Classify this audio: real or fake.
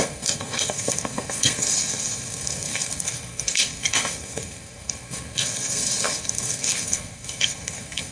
fake